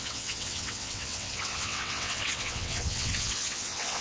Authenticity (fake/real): fake